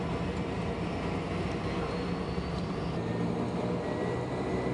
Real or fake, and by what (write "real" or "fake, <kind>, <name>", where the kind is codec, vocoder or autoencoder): real